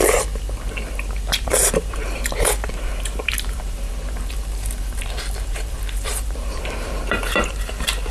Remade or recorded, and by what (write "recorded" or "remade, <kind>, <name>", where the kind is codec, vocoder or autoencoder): remade, vocoder, BigVGAN v2